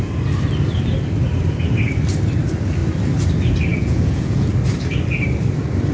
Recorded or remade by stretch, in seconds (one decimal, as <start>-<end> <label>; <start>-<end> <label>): 0.0-3.7 recorded; 3.7-4.5 remade; 4.5-5.9 recorded